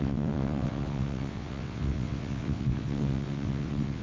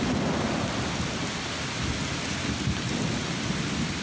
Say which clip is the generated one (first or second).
first